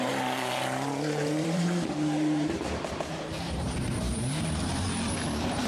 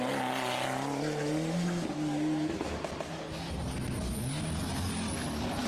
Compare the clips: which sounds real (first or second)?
second